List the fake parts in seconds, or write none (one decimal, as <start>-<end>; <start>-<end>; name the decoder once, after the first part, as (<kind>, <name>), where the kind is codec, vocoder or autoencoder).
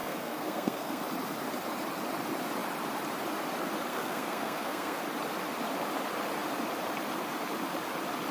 0.0-1.0 (codec, SNAC); 3.9-5.0